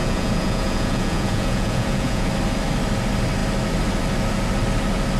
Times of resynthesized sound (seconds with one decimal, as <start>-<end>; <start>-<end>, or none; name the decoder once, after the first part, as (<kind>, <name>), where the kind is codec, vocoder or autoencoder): 0.0-2.3 (vocoder, Vocos)